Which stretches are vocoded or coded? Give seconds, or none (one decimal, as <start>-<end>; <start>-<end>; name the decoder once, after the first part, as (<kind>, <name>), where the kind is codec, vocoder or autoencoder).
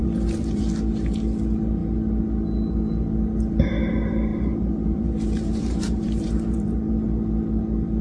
0.0-0.6 (vocoder, BigVGAN v2); 4.3-6.9